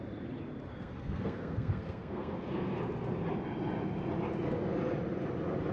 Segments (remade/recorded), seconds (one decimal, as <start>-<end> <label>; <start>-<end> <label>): 0.0-0.7 recorded; 0.7-2.8 remade; 2.8-5.7 recorded